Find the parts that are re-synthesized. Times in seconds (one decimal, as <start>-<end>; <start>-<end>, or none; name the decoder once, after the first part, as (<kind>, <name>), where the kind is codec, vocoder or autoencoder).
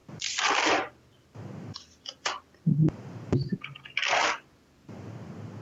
0.0-1.1 (vocoder, BigVGAN v2); 2.8-5.1